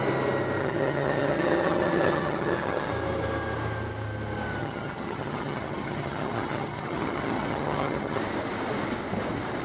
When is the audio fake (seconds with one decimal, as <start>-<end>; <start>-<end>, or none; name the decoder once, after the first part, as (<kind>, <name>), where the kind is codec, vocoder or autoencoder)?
0.6-2.9 (vocoder, HiFi-GAN); 4.6-8.2